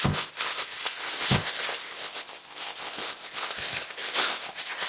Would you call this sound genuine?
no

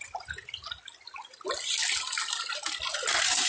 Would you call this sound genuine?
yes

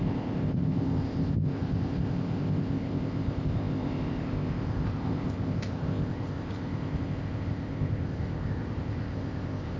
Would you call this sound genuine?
no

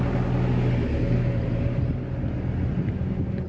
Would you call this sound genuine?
yes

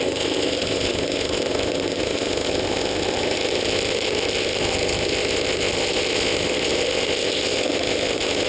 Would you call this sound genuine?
no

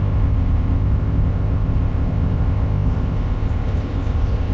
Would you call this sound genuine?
no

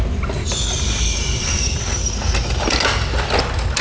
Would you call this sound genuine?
yes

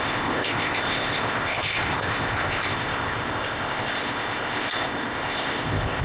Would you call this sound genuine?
no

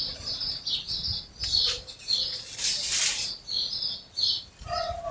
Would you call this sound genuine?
yes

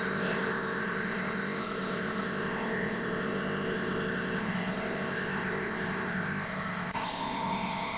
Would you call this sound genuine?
no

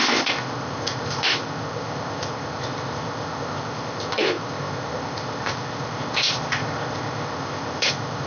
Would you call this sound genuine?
no